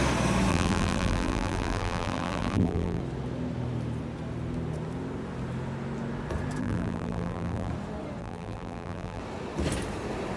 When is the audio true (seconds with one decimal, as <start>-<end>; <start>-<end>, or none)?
0.0-0.5; 3.0-6.6; 7.7-8.2; 9.2-10.4

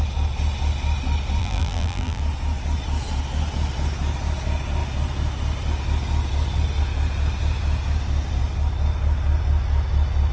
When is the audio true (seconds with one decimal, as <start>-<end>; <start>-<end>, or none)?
0.0-1.4; 2.2-10.3

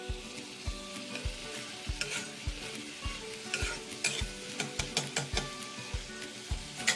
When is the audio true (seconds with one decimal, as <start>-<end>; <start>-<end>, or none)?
0.0-7.0

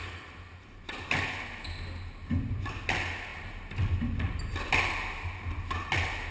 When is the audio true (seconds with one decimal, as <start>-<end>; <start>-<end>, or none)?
0.0-6.3